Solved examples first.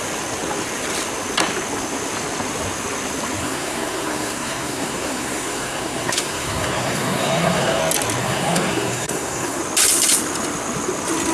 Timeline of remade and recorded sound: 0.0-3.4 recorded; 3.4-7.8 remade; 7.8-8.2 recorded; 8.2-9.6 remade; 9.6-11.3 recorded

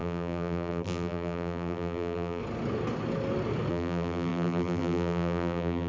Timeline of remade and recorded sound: 0.0-2.4 remade; 2.4-3.7 recorded; 3.7-5.9 remade

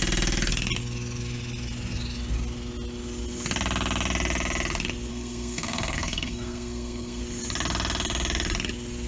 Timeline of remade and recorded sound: 0.0-5.1 recorded; 5.1-7.2 remade; 7.2-9.1 recorded

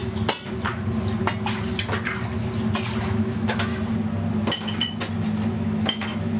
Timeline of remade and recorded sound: 0.0-3.0 recorded; 3.0-3.7 remade; 3.7-5.5 recorded; 5.5-6.4 remade

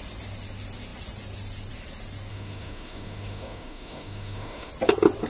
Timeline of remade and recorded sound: 0.0-2.3 recorded; 2.3-4.7 remade; 4.7-5.3 recorded

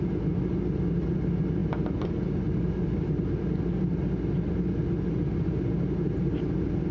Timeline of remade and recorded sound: 0.0-6.9 recorded

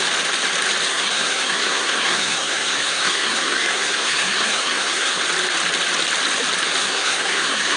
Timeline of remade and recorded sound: 0.0-0.9 recorded; 0.9-5.2 remade; 5.2-6.8 recorded; 6.8-7.8 remade